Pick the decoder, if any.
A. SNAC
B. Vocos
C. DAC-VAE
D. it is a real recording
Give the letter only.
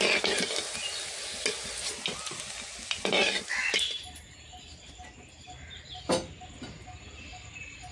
D